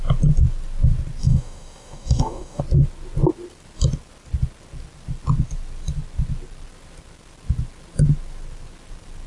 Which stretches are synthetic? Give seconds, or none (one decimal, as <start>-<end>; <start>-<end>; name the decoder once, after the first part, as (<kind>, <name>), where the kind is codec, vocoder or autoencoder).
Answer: 1.2-2.6 (codec, DAC)